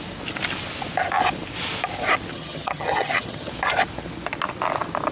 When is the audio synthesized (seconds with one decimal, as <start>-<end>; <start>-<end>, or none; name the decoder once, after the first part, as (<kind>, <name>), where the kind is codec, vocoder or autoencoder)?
2.3-3.5 (vocoder, HiFi-GAN)